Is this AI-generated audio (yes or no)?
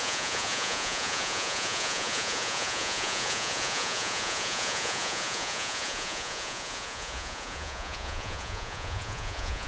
yes